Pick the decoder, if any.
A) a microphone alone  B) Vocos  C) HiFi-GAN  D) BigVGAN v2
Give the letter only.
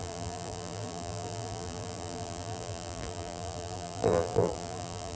D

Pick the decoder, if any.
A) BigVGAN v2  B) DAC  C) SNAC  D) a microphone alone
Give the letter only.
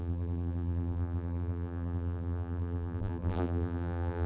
A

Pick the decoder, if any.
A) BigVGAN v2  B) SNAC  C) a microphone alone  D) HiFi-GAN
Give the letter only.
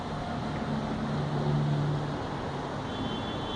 C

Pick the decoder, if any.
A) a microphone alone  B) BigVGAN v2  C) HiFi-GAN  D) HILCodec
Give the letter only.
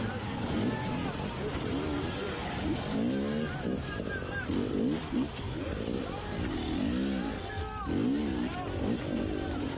A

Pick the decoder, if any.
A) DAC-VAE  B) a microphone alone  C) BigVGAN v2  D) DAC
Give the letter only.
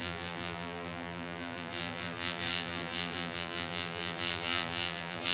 C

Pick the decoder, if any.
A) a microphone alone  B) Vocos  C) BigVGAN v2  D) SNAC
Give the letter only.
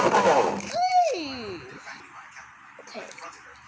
A